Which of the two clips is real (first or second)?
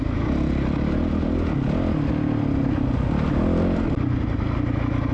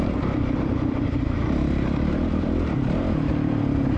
first